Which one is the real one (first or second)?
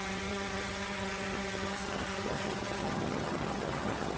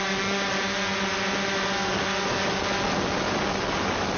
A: second